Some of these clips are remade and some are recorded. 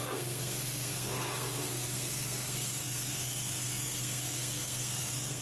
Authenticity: remade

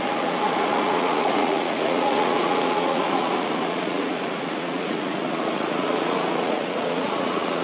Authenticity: remade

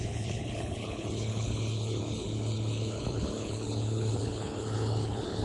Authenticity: remade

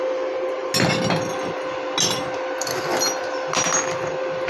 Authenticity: recorded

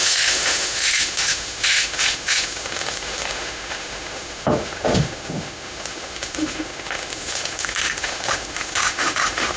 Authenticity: remade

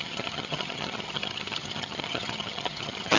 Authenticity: remade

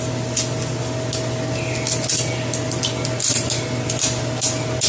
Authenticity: recorded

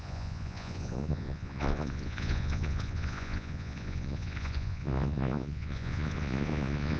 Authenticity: remade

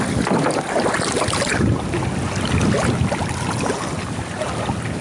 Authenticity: recorded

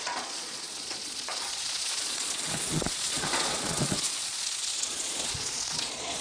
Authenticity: remade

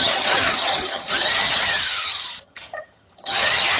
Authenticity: remade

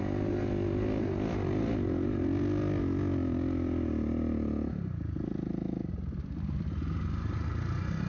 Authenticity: recorded